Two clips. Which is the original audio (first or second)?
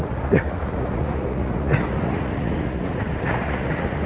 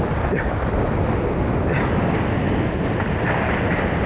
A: second